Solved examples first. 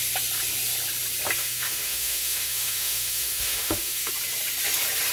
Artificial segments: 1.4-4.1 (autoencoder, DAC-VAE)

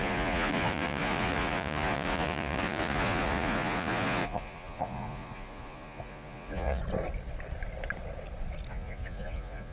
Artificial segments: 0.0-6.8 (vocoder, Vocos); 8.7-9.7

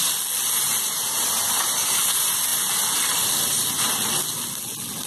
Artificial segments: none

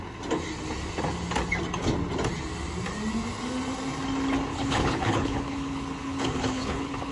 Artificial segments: 4.5-7.1 (codec, HILCodec)

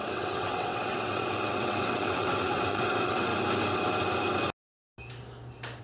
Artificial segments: 0.0-3.3 (vocoder, WaveNeXt)